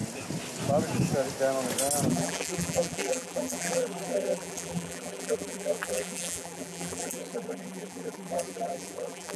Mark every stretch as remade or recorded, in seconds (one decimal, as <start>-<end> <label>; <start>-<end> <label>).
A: 0.0-2.1 recorded; 2.1-9.4 remade